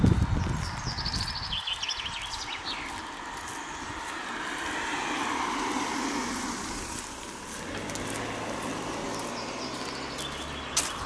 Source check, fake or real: real